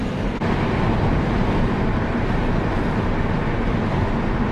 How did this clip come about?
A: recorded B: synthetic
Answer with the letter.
A